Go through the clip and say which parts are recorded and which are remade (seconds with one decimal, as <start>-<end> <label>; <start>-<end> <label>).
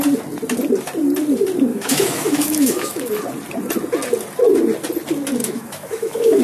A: 0.0-1.7 recorded; 1.7-3.2 remade; 3.2-5.4 recorded; 5.4-6.4 remade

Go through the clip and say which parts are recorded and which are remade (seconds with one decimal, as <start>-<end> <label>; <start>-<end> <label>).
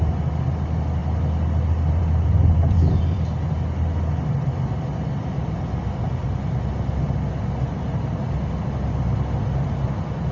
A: 0.0-10.3 recorded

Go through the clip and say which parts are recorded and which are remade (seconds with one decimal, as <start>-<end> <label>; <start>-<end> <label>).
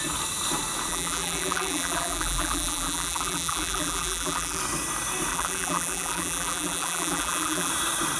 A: 0.0-0.9 recorded; 0.9-4.6 remade; 4.6-5.3 recorded; 5.3-7.7 remade; 7.7-8.2 recorded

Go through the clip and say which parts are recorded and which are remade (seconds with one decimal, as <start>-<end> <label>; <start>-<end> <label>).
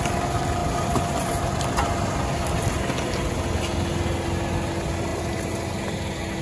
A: 0.0-5.1 recorded; 5.1-5.8 remade; 5.8-6.4 recorded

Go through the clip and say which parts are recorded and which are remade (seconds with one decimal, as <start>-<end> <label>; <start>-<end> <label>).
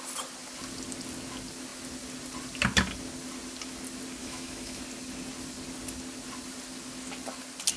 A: 0.0-4.2 recorded; 4.2-4.8 remade; 4.8-7.8 recorded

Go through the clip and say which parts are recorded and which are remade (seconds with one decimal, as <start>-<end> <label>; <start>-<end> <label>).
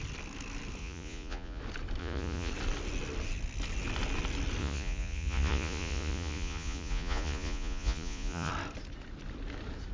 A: 0.0-0.8 recorded; 0.8-1.6 remade; 1.6-2.0 recorded; 2.0-2.5 remade; 2.5-4.6 recorded; 4.6-8.5 remade; 8.5-9.9 recorded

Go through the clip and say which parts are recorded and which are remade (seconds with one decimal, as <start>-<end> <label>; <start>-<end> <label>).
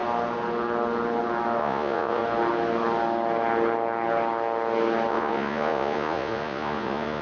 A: 0.0-1.6 recorded; 1.6-2.2 remade; 2.2-5.1 recorded; 5.1-7.2 remade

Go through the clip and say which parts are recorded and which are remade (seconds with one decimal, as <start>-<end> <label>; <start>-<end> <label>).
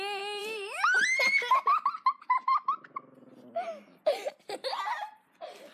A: 0.0-0.4 recorded; 0.4-1.0 remade; 1.0-5.7 recorded